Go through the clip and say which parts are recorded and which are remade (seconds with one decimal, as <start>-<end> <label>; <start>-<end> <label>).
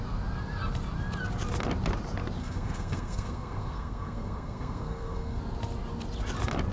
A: 0.0-2.4 recorded; 2.4-5.4 remade; 5.4-6.7 recorded